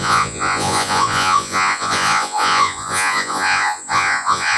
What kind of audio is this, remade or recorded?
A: remade